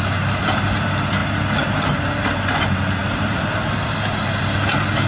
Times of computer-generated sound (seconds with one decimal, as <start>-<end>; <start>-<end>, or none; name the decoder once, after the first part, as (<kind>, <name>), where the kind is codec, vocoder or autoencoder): none